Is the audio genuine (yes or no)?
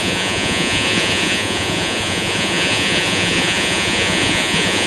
no